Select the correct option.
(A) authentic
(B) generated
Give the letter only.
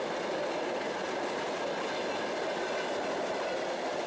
A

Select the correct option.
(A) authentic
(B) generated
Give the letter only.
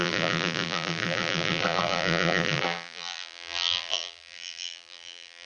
B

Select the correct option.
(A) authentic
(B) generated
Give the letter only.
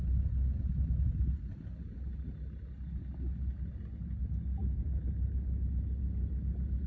A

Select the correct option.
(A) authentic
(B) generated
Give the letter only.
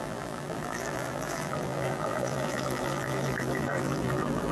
B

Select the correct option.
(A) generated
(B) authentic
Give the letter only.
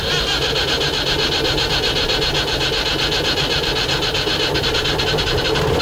B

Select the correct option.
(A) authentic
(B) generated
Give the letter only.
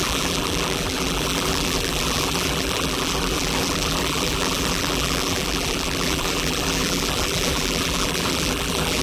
B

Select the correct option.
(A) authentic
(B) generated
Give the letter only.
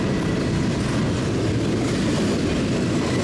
A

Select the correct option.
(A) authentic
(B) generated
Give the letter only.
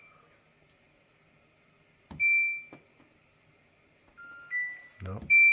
A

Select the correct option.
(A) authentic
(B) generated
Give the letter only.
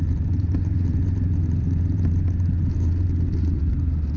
B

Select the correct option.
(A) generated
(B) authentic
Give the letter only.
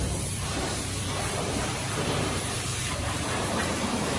A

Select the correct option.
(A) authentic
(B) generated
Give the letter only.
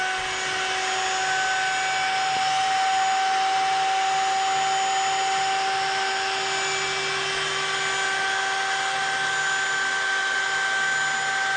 A